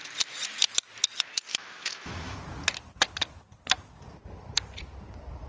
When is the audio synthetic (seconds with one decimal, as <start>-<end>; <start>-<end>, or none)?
1.5-2.4